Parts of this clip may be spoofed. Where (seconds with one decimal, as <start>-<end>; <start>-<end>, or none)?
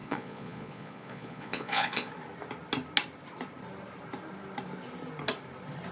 0.0-2.1